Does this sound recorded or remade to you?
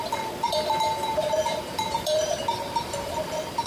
remade